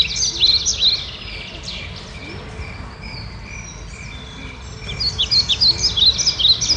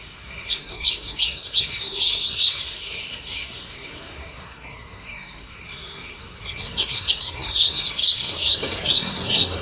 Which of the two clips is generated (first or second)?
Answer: second